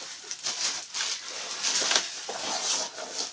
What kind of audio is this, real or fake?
real